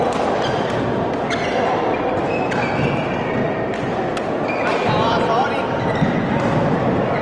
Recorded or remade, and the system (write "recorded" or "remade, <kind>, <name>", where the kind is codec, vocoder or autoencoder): recorded